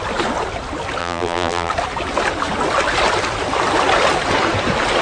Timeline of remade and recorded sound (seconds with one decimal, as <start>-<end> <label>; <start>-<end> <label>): 0.0-1.0 recorded; 1.0-1.7 remade; 1.7-5.0 recorded